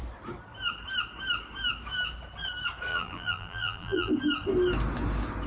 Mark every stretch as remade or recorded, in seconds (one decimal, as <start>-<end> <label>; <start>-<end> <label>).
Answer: 0.0-2.9 recorded; 2.9-4.1 remade; 4.1-5.5 recorded